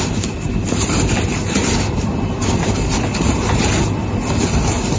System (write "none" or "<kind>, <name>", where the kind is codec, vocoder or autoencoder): none